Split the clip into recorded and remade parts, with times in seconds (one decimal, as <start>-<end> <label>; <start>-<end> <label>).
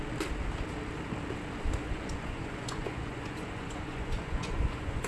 0.0-1.8 recorded; 1.8-5.1 remade